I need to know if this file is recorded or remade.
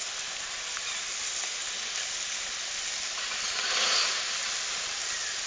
recorded